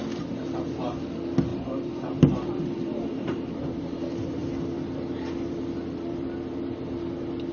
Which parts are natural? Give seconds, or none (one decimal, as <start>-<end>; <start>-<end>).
0.0-1.5; 3.5-7.5